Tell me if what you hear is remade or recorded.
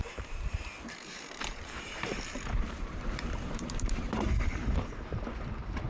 remade